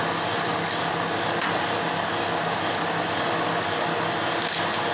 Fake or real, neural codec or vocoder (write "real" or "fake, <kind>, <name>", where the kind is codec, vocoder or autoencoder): real